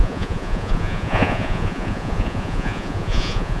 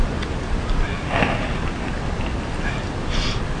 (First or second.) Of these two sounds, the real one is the second